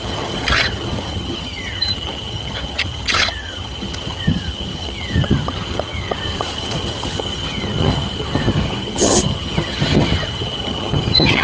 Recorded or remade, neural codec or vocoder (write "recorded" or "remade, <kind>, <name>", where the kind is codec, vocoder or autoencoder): remade, vocoder, HiFi-GAN